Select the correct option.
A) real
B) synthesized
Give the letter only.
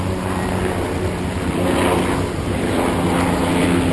A